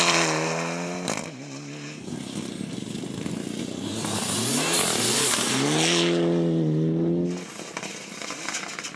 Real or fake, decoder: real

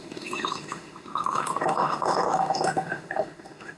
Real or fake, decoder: fake, autoencoder, DAC-VAE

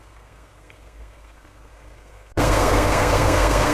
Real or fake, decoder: fake, codec, SNAC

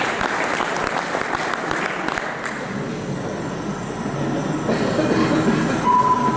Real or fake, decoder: real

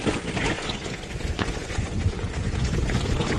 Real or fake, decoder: fake, vocoder, Vocos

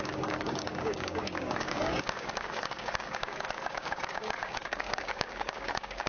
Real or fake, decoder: fake, codec, DAC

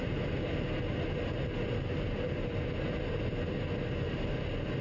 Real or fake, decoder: real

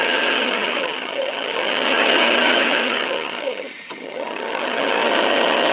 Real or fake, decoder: fake, vocoder, HiFi-GAN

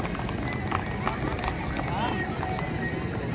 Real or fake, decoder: real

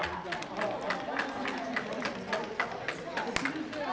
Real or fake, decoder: real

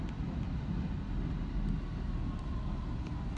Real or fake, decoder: real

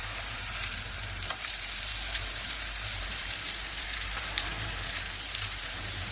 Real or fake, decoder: fake, vocoder, BigVGAN v2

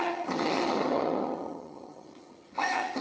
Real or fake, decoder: fake, vocoder, HiFi-GAN